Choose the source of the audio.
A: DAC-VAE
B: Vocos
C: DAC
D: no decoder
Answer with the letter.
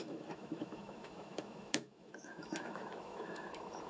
A